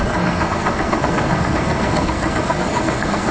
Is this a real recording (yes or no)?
no